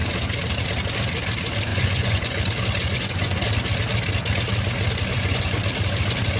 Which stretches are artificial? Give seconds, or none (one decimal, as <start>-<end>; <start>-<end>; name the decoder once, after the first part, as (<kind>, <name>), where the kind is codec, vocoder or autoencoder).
1.7-2.4 (vocoder, Vocos); 2.8-3.4; 5.1-5.6